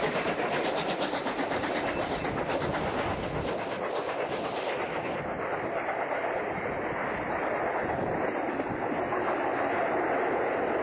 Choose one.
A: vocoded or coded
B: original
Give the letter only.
B